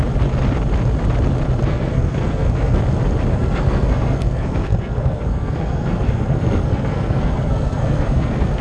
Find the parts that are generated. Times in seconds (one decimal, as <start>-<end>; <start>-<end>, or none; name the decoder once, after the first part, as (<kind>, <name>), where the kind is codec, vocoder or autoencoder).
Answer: 1.7-2.8 (codec, SNAC); 3.3-8.6